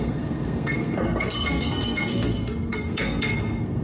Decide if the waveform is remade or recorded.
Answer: remade